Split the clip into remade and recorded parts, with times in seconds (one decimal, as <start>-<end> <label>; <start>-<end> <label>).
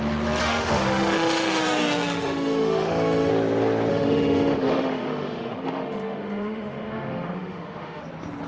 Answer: 0.0-0.4 recorded; 0.4-3.3 remade; 3.3-3.9 recorded; 3.9-8.0 remade; 8.0-8.5 recorded